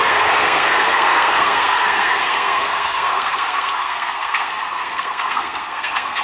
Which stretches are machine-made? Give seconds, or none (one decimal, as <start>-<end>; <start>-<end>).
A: 0.0-6.2